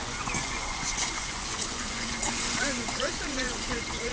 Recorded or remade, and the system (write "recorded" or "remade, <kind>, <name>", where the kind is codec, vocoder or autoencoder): remade, vocoder, Vocos